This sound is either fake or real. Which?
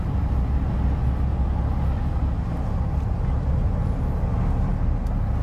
real